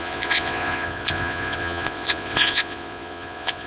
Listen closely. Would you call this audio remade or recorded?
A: remade